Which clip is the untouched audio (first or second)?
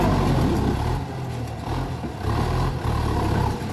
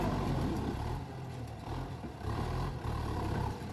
first